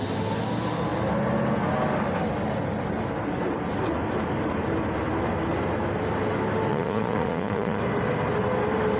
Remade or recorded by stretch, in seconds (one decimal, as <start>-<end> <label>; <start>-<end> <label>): 0.0-6.7 recorded; 6.7-7.8 remade; 7.8-9.0 recorded